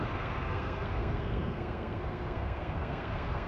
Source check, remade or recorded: remade